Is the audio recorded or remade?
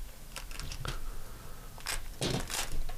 recorded